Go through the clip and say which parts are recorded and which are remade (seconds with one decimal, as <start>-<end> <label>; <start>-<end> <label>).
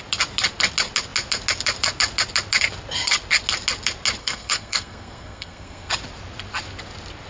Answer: 0.0-4.2 recorded; 4.2-5.9 remade; 5.9-7.3 recorded